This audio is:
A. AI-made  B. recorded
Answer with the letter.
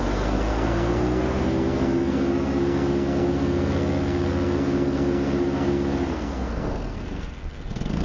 A